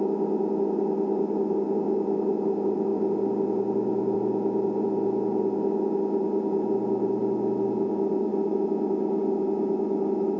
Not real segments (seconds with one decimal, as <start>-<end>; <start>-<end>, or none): none